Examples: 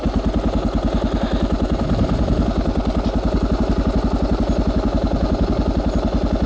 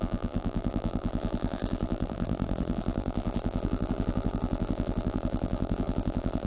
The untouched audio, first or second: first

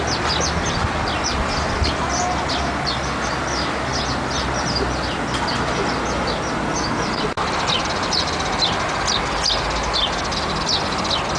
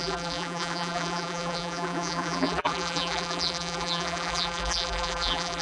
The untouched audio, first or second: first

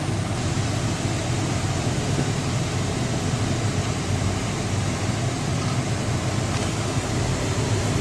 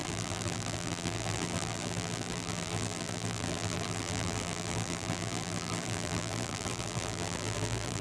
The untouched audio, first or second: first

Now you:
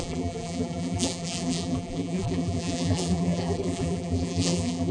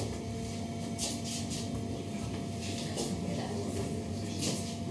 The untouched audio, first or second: second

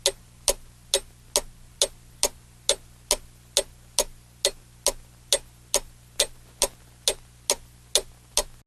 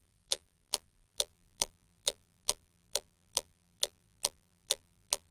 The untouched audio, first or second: first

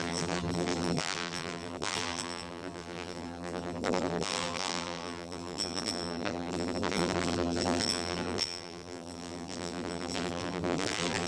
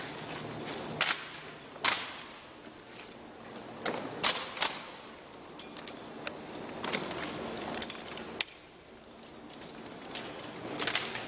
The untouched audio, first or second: second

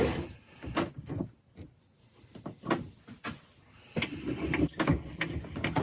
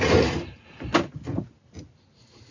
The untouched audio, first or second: second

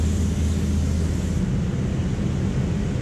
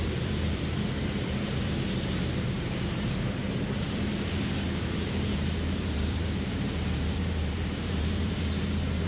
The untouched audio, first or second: first